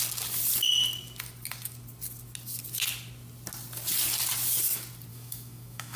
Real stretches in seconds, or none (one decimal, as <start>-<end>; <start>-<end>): 0.0-5.1